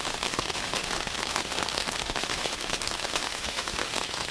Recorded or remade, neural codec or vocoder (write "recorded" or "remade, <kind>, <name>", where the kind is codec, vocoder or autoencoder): remade, autoencoder, DAC-VAE